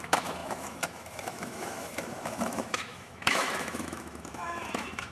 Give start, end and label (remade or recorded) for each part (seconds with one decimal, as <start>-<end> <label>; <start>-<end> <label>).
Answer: 0.0-5.1 remade